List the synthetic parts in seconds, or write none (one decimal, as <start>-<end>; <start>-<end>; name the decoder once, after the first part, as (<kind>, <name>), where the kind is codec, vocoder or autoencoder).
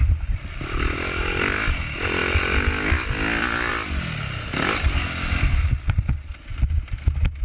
none